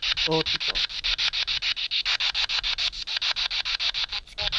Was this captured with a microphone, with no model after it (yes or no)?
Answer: yes